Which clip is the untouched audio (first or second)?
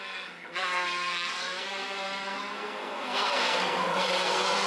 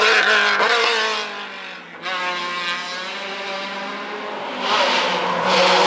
second